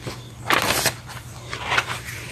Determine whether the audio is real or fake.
real